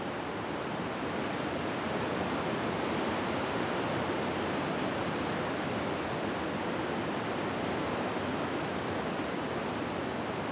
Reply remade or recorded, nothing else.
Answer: recorded